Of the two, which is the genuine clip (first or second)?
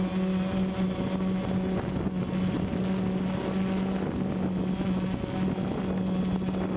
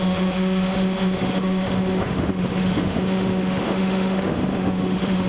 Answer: first